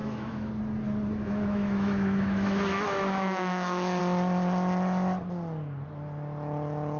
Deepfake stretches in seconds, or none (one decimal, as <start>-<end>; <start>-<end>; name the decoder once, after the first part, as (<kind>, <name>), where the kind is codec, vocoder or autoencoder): 0.0-0.5 (autoencoder, DAC-VAE); 1.2-4.0

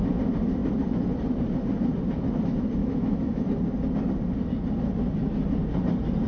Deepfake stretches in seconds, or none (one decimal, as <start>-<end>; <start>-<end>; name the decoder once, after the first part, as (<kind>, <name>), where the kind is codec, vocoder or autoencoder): 2.8-3.5 (autoencoder, DAC-VAE)

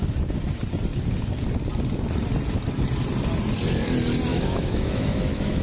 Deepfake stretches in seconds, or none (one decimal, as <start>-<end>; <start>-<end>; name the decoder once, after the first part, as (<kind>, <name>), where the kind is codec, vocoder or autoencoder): 4.3-5.6 (autoencoder, DAC-VAE)

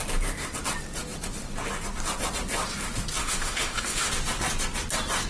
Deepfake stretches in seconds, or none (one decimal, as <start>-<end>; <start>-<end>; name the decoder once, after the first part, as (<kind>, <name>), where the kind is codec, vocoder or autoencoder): 3.2-4.1 (autoencoder, DAC-VAE)

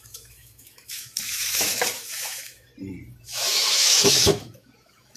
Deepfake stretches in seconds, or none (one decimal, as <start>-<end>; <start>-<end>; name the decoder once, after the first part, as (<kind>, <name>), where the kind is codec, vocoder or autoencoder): 0.0-2.7 (autoencoder, DAC-VAE); 3.2-5.2

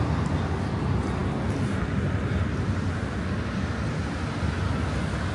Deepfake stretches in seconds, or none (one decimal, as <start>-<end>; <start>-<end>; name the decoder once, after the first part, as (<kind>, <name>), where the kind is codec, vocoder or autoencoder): none

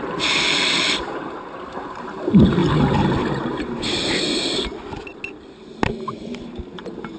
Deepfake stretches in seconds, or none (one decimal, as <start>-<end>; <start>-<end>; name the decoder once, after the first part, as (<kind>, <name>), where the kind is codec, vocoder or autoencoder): none